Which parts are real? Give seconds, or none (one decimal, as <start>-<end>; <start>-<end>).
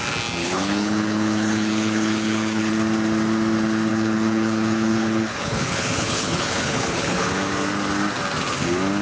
0.0-0.4; 2.7-3.9; 7.3-9.0